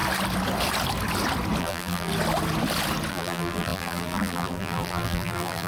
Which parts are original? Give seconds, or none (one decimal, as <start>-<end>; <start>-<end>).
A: 0.0-1.6; 2.1-3.1